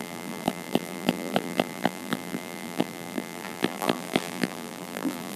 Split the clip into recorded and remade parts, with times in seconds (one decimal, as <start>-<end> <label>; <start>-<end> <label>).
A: 0.0-5.4 remade